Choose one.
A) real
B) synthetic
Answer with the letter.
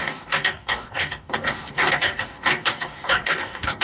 B